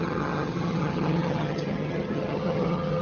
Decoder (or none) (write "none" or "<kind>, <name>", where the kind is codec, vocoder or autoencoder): vocoder, HiFi-GAN